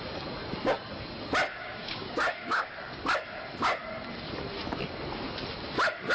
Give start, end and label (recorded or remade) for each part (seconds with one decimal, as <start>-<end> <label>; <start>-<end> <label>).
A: 0.0-1.6 recorded; 1.6-2.7 remade; 2.7-6.1 recorded